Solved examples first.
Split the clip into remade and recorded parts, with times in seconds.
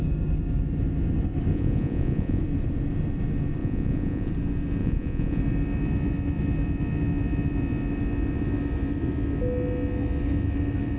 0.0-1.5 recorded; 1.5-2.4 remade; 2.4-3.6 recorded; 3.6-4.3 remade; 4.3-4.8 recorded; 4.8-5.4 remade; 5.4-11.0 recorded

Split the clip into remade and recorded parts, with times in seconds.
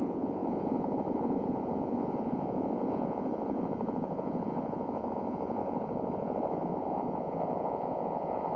0.0-8.6 remade